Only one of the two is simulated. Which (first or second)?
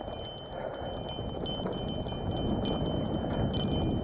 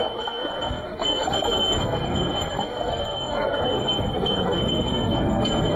second